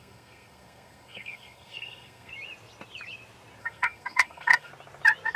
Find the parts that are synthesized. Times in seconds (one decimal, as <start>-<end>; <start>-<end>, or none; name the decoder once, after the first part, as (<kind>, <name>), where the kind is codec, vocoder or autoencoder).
0.0-2.3 (codec, SNAC); 3.6-4.7